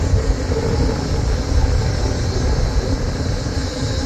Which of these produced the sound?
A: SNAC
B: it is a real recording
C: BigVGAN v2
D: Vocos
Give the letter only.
B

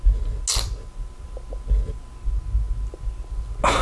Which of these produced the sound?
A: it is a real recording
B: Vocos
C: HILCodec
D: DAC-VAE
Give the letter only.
A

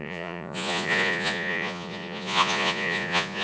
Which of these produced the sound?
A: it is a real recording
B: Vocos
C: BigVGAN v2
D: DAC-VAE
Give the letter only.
B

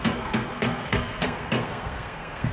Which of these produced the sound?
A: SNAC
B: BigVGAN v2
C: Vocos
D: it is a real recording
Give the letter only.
A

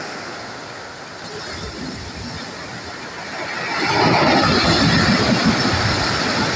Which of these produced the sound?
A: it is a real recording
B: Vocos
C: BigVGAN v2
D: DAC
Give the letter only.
A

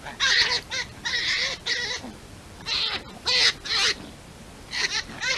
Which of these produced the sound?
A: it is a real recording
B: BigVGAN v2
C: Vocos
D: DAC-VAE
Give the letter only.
B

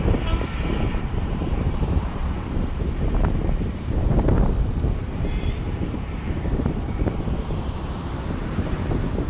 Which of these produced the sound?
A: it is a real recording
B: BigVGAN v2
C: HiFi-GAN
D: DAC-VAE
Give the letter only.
B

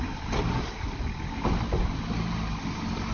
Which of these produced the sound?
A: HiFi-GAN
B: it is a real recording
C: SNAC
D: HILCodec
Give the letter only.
B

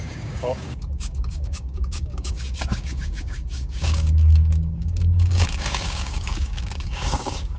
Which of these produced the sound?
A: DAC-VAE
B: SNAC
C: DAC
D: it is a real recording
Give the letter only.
C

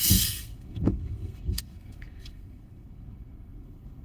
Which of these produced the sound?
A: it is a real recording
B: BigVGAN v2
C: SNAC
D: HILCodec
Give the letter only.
C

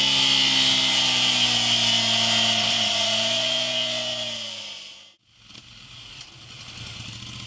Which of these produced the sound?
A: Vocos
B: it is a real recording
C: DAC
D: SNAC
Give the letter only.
B